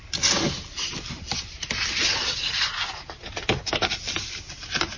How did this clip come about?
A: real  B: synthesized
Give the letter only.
A